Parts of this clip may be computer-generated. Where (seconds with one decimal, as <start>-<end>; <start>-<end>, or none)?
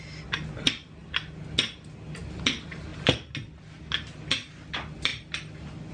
none